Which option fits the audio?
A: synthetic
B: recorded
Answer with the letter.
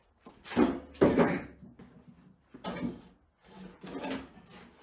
B